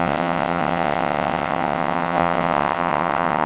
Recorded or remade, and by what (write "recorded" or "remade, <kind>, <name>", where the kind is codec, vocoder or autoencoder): remade, vocoder, WaveNeXt